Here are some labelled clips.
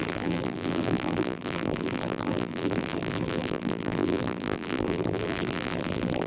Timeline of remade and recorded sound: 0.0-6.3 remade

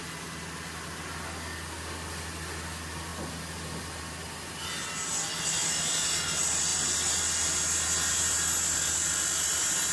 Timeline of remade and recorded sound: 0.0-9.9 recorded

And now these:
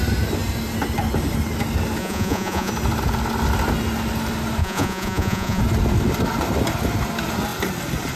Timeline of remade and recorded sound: 0.0-2.0 recorded; 2.0-2.7 remade; 2.7-4.6 recorded; 4.6-5.6 remade; 5.6-8.2 recorded

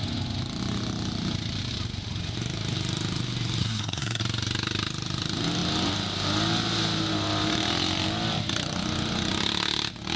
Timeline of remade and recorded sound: 0.0-3.6 recorded; 3.6-4.2 remade; 4.2-10.2 recorded